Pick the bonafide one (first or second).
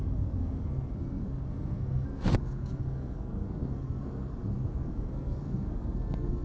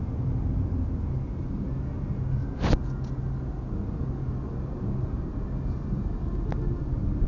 second